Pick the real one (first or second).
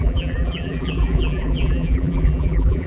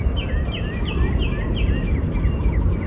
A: second